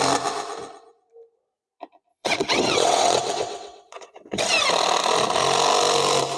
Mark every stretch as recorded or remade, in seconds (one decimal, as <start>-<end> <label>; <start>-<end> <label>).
0.0-2.1 recorded; 2.1-4.4 remade; 4.4-6.4 recorded